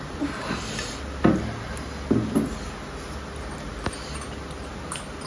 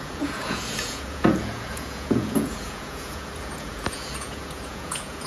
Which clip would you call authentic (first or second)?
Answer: first